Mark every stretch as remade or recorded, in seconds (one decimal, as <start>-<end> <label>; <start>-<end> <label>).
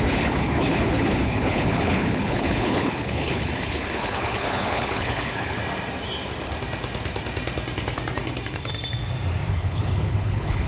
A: 0.0-5.6 remade; 5.6-9.5 recorded; 9.5-10.7 remade